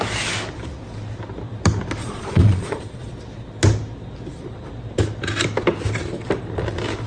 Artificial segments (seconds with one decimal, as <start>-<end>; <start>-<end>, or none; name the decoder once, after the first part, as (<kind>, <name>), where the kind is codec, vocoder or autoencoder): 2.0-3.1 (vocoder, Vocos)